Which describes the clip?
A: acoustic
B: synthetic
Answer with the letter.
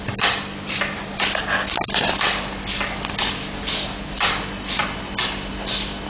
A